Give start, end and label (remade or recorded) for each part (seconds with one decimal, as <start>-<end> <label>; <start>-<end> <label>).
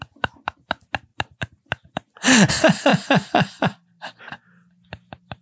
0.0-2.9 recorded; 2.9-4.0 remade; 4.0-5.4 recorded